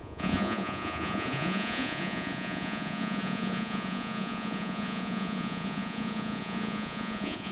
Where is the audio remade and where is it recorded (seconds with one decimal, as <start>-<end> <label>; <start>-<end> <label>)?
0.0-7.5 remade